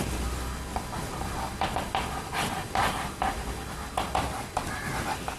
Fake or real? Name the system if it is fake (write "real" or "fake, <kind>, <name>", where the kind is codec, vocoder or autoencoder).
real